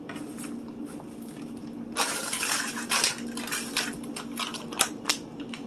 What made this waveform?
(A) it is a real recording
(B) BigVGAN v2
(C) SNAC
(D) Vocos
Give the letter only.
A